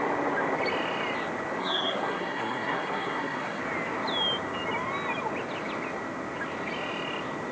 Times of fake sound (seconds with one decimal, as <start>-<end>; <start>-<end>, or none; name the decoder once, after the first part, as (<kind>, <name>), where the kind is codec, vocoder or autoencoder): 1.6-3.6 (codec, SNAC)